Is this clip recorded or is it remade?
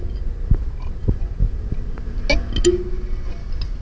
recorded